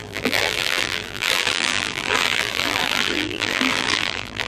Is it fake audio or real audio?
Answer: fake